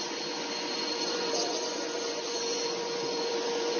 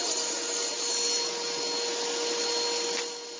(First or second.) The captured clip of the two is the second